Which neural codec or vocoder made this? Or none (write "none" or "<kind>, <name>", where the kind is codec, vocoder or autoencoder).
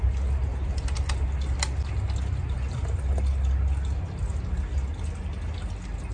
none